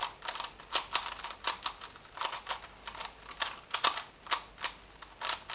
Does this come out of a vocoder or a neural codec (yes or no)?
no